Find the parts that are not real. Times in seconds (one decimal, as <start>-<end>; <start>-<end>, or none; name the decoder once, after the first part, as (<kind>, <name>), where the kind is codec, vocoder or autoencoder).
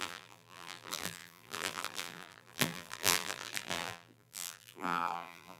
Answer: 0.0-5.6 (vocoder, BigVGAN v2)